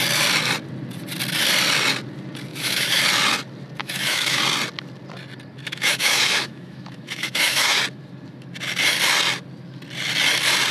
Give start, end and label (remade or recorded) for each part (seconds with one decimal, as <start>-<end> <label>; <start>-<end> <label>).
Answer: 0.0-2.5 recorded; 2.5-3.0 remade; 3.0-3.8 recorded; 3.8-4.4 remade; 4.4-5.6 recorded; 5.6-7.8 remade; 7.8-10.7 recorded